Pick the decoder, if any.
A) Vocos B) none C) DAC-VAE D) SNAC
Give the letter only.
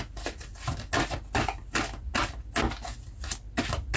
B